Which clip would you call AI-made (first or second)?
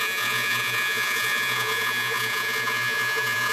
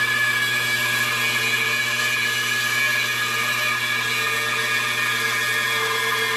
first